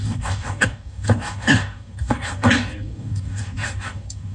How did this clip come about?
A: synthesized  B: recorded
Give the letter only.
A